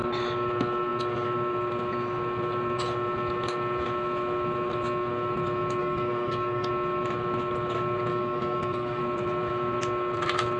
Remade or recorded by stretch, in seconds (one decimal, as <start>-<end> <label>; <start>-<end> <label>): 0.0-5.8 recorded; 5.8-6.7 remade; 6.7-8.1 recorded; 8.1-9.0 remade; 9.0-10.6 recorded